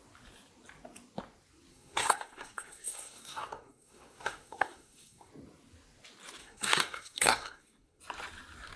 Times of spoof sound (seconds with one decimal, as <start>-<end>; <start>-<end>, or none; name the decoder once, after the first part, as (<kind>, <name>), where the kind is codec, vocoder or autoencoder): 1.7-5.3 (codec, SNAC); 6.4-8.0